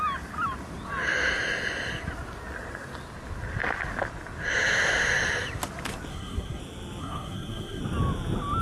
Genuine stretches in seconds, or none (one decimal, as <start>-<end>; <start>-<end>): 0.0-6.1; 6.6-7.0; 7.8-8.6